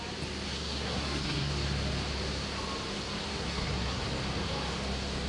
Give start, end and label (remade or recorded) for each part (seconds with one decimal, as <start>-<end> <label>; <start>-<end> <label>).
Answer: 0.0-0.5 recorded; 0.5-1.5 remade; 1.5-3.3 recorded; 3.3-4.0 remade; 4.0-5.3 recorded

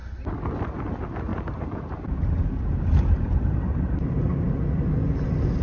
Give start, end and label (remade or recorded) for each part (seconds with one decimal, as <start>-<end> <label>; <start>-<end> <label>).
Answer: 0.0-1.3 recorded; 1.3-4.5 remade; 4.5-5.6 recorded